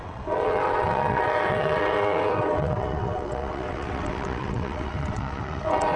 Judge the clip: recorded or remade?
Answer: remade